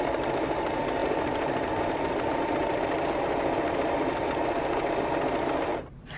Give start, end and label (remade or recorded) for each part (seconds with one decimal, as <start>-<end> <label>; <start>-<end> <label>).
0.0-6.2 recorded